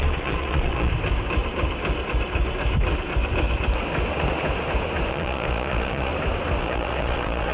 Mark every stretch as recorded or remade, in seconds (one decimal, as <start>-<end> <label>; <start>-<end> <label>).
0.0-0.9 remade; 0.9-5.1 recorded; 5.1-6.1 remade; 6.1-6.6 recorded; 6.6-7.5 remade